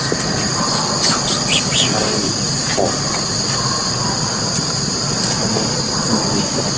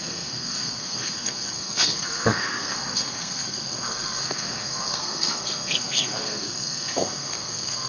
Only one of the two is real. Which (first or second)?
first